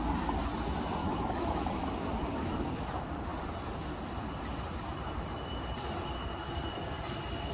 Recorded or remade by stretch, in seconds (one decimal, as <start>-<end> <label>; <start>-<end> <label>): 0.0-1.0 recorded; 1.0-1.7 remade; 1.7-7.5 recorded